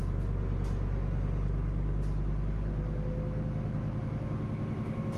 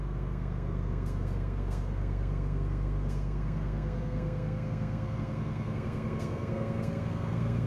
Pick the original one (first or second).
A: first